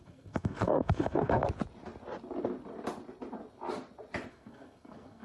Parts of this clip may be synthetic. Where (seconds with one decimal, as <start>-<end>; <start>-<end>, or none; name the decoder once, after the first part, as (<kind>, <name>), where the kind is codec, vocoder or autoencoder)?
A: 0.0-1.4 (codec, SNAC); 4.3-5.2